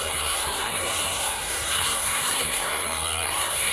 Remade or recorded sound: remade